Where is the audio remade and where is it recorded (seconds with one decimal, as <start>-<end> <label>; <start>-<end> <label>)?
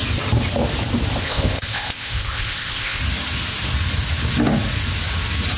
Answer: 0.0-1.2 recorded; 1.2-3.0 remade; 3.0-5.6 recorded